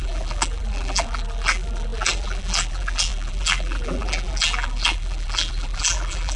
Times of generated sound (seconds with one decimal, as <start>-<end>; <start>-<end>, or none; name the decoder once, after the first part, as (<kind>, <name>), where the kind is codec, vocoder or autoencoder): 0.0-6.4 (vocoder, BigVGAN v2)